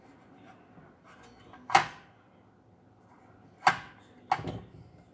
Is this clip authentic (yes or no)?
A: yes